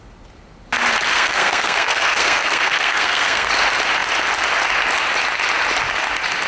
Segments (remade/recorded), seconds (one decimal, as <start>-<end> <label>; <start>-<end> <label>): 0.0-1.1 recorded; 1.1-3.5 remade; 3.5-6.5 recorded